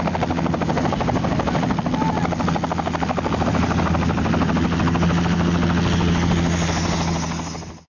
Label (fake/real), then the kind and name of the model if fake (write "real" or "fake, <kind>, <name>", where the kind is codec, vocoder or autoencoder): real